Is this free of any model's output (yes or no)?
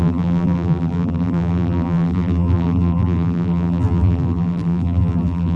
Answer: no